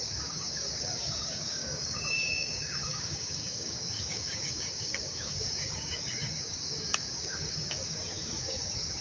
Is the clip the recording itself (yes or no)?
no